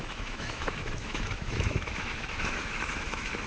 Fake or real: fake